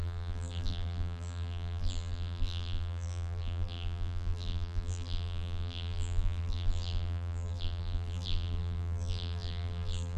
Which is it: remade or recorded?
remade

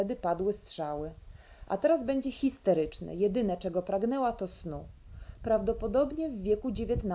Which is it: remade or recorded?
recorded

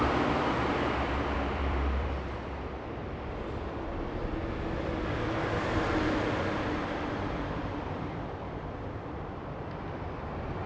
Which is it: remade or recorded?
remade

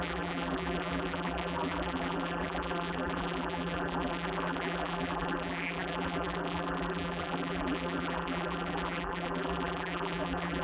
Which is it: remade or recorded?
remade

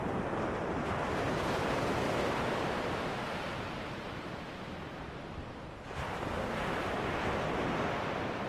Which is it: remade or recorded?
recorded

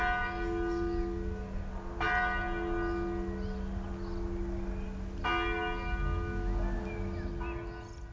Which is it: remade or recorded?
recorded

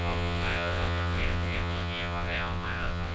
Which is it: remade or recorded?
remade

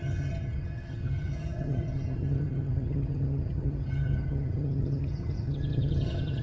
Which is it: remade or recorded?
remade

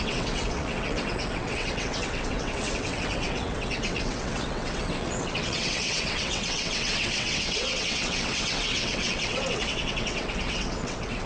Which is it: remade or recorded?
remade